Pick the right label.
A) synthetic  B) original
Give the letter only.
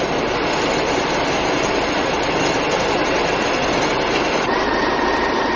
A